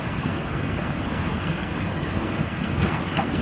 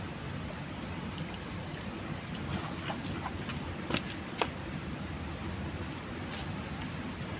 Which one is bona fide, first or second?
second